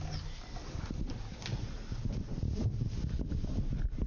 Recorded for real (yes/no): yes